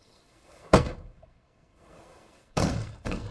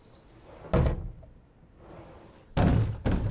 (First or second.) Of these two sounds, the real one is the second